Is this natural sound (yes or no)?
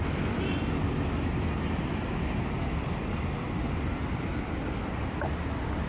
yes